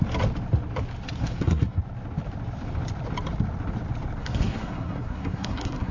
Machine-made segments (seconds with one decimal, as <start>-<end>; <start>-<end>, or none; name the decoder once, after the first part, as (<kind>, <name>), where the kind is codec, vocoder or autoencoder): 1.2-1.8 (codec, SNAC); 4.2-5.9